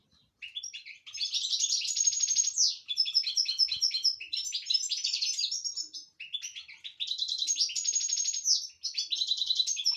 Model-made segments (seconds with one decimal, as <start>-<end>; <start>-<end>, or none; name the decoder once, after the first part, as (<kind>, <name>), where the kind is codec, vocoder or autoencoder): 0.6-6.0 (vocoder, BigVGAN v2)